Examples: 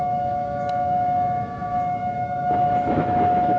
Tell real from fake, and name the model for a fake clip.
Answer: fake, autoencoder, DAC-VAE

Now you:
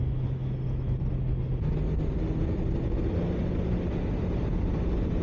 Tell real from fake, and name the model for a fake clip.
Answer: real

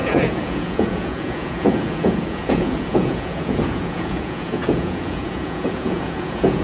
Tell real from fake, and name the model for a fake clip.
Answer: fake, vocoder, Vocos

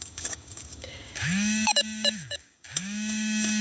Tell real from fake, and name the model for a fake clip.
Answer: fake, codec, DAC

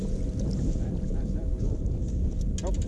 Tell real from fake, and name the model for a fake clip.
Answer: real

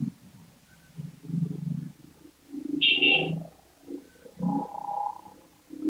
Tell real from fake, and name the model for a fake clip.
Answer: real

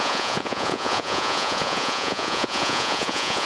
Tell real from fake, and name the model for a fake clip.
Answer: fake, vocoder, Vocos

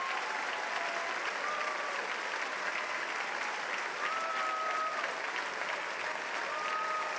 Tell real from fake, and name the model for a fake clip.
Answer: real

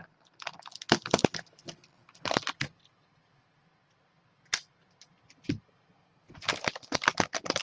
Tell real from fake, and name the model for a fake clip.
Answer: real